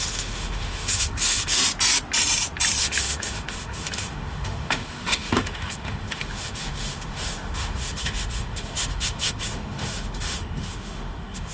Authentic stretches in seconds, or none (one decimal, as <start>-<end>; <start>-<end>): 1.6-2.8

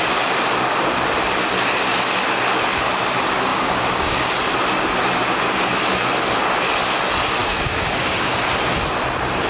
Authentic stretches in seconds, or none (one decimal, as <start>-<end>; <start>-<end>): 0.0-3.5; 4.3-7.4; 8.3-9.5

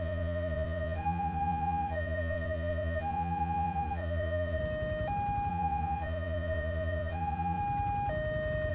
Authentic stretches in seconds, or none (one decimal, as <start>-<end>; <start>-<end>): 4.6-5.5; 7.6-8.7

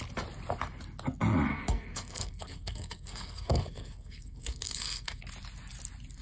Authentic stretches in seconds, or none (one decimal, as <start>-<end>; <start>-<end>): 0.0-1.5; 5.2-6.2

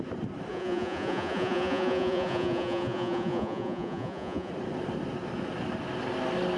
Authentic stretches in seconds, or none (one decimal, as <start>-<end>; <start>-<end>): 0.0-0.5; 4.5-6.6

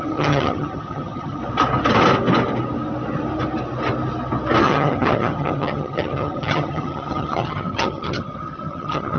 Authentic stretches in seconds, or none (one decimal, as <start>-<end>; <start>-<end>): 1.4-4.6

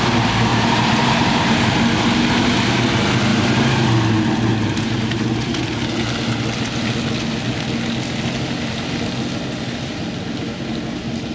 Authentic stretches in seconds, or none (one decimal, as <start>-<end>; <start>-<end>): 0.0-0.5; 1.8-3.3; 3.9-4.5; 5.7-11.3

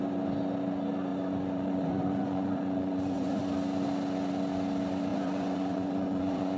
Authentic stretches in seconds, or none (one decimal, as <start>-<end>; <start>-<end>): 0.0-1.1; 3.4-5.1